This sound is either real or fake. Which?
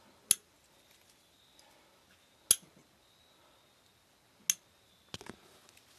real